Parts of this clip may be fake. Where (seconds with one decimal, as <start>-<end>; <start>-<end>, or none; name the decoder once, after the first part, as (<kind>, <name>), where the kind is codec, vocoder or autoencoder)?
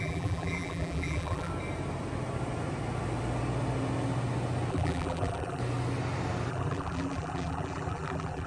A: 0.0-1.5 (vocoder, BigVGAN v2); 4.7-5.6; 6.5-8.5